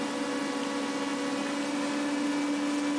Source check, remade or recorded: recorded